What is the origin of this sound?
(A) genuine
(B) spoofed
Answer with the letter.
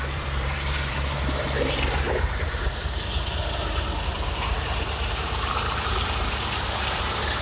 B